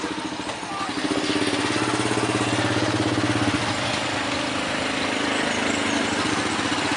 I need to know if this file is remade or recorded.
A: recorded